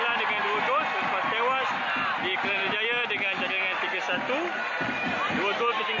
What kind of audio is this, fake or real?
real